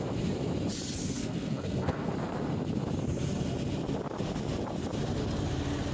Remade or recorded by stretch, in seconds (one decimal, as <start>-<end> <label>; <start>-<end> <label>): 0.0-1.0 recorded; 1.0-2.1 remade; 2.1-5.9 recorded